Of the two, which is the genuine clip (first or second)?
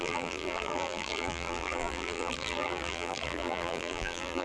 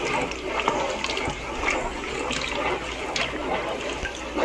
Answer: second